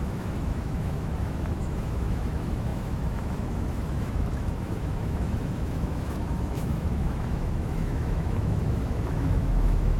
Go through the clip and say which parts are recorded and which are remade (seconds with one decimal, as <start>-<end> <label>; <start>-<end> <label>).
0.0-10.0 remade